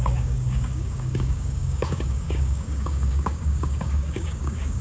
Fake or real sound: fake